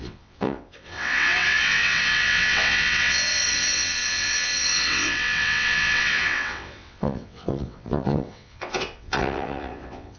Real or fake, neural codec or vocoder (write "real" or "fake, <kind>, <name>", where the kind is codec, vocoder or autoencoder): fake, vocoder, WaveNeXt